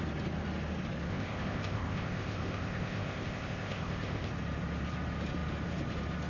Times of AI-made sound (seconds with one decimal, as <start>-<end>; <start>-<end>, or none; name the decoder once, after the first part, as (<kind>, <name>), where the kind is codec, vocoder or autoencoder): 1.1-4.3 (codec, ZipCodec)